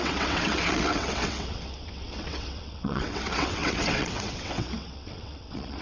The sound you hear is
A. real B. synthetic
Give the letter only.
B